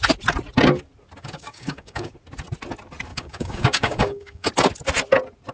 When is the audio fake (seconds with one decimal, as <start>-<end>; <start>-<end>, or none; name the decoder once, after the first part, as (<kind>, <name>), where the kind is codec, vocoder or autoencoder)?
1.2-2.1 (codec, DAC); 3.1-4.5